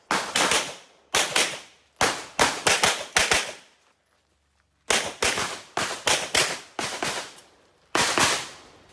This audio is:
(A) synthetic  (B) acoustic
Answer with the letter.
B